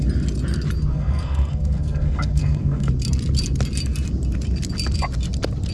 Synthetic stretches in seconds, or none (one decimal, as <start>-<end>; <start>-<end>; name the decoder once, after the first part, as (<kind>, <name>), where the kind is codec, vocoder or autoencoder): 0.9-2.9 (codec, SNAC)